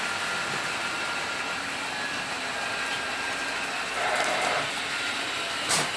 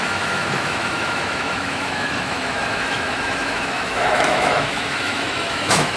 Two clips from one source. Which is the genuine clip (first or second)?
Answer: first